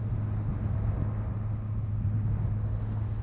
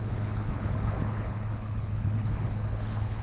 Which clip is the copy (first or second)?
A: second